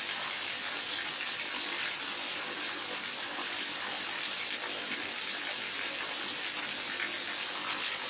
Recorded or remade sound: recorded